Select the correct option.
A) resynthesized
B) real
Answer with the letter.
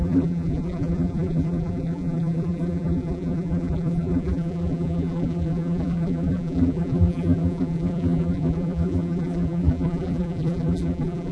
A